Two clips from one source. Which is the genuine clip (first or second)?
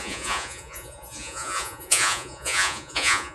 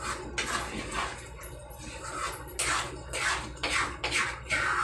second